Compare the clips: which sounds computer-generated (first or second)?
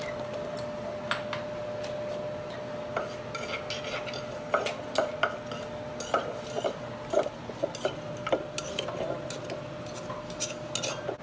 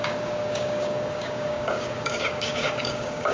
second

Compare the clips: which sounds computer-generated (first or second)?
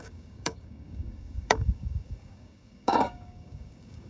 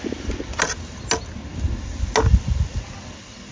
first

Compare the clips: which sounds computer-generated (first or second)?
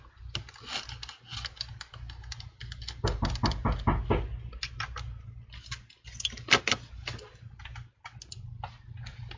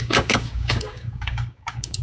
second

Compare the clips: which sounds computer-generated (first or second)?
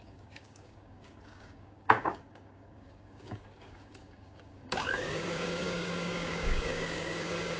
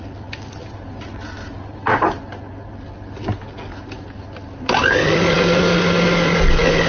first